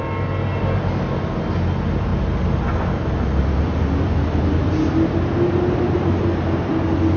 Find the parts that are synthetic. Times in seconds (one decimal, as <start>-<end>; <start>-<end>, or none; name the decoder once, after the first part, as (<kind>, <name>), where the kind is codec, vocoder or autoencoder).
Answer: none